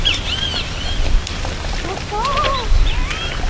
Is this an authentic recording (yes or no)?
yes